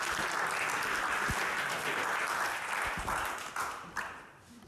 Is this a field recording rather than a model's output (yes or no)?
yes